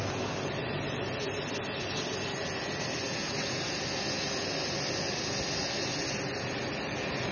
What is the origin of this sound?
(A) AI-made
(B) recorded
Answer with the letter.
B